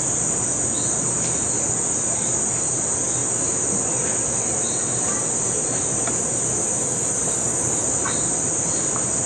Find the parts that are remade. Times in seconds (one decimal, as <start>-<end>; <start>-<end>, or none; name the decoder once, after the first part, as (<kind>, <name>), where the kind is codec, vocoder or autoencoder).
none